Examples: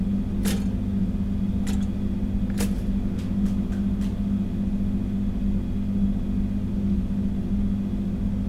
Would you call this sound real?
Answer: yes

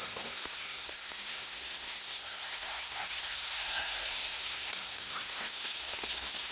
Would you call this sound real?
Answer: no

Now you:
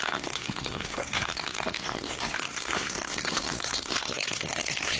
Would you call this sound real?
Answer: no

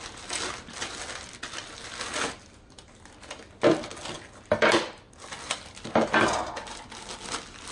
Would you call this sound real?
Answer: yes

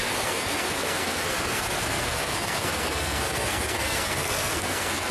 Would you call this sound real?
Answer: no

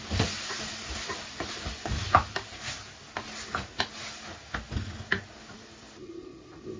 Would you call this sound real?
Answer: yes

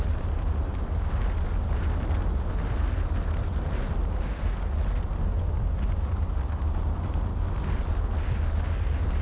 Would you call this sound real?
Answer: yes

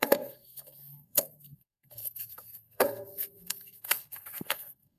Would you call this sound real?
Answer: no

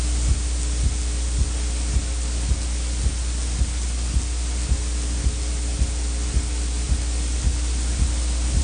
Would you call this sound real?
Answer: yes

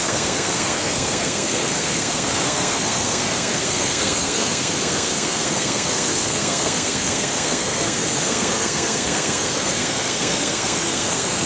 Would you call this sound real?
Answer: no